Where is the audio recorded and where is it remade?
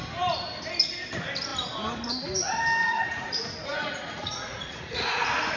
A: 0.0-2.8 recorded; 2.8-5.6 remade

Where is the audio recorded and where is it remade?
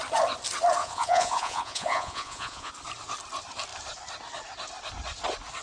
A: 0.0-0.8 recorded; 0.8-2.7 remade; 2.7-5.6 recorded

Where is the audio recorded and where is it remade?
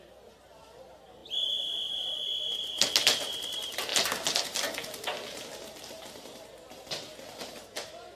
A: 0.0-8.2 recorded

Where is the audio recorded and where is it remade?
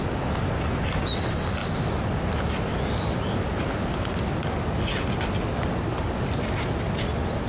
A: 0.0-7.5 recorded